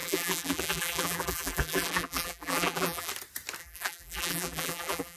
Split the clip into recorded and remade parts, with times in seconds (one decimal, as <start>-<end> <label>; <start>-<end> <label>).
0.0-3.1 remade; 3.1-3.6 recorded; 3.6-5.2 remade